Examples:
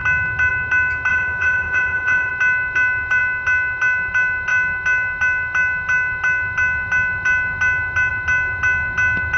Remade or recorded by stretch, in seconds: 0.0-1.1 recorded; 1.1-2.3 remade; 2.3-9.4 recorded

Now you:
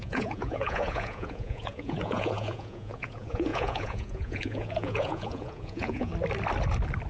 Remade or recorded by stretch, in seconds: 0.0-6.1 remade; 6.1-7.1 recorded

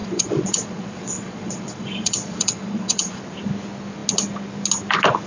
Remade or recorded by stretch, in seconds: 0.0-3.2 remade; 3.2-5.3 recorded

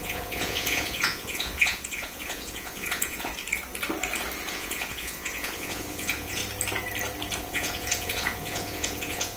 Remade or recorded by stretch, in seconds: 0.0-3.3 remade; 3.3-4.5 recorded; 4.5-6.4 remade; 6.4-7.4 recorded; 7.4-9.4 remade

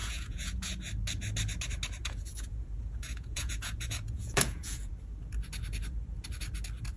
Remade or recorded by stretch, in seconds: 0.0-0.8 remade; 0.8-2.0 recorded; 2.0-4.9 remade; 4.9-7.0 recorded